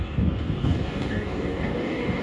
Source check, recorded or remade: remade